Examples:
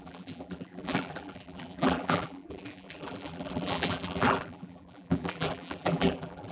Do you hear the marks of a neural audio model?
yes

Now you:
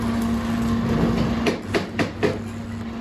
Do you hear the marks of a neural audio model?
no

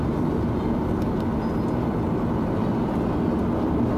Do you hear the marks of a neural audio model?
no